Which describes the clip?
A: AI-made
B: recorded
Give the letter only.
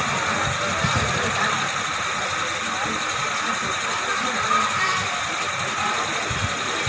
B